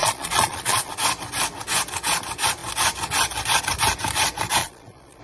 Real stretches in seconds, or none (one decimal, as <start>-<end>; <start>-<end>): 0.9-4.6